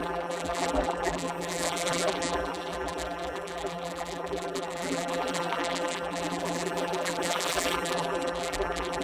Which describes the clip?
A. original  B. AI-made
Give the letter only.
B